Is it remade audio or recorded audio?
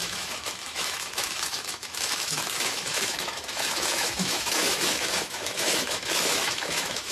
remade